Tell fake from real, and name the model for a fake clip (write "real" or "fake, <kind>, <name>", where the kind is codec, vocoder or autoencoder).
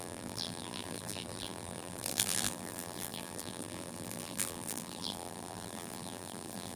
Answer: fake, vocoder, BigVGAN v2